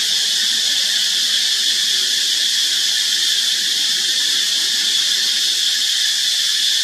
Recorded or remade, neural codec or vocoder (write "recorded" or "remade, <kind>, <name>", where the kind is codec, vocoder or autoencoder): recorded